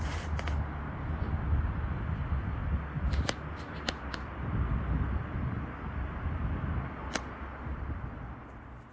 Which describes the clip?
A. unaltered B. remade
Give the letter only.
A